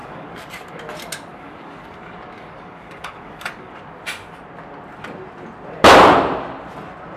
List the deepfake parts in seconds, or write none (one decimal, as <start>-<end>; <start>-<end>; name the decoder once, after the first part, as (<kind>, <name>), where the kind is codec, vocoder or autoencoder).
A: 0.0-0.8 (codec, DAC); 1.3-3.8